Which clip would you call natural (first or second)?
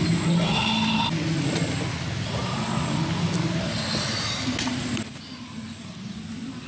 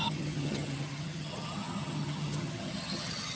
first